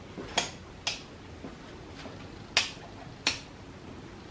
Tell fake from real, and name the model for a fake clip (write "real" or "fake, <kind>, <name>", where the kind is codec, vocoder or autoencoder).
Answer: real